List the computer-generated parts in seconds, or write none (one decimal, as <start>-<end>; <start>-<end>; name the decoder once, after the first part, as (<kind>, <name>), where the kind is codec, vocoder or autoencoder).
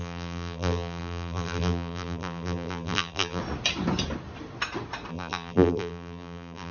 0.0-3.4 (vocoder, BigVGAN v2); 5.1-6.7